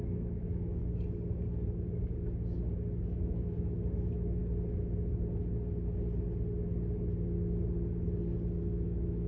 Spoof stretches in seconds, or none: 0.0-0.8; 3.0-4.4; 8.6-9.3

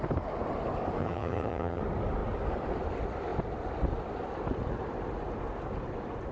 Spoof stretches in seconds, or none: 1.0-1.8

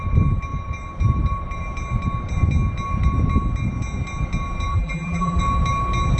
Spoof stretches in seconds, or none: 4.7-5.4

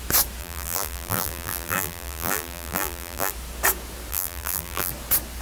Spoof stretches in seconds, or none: 0.4-3.3; 4.1-4.9

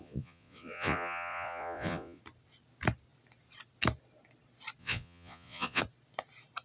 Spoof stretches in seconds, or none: 0.0-2.2; 4.8-5.8